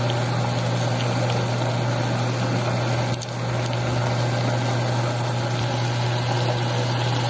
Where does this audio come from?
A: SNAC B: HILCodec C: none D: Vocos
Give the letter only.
C